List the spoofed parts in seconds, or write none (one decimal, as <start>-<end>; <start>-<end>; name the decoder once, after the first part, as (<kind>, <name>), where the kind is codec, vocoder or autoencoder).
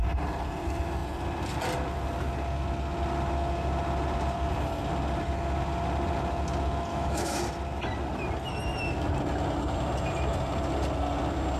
6.9-7.4 (autoencoder, DAC-VAE)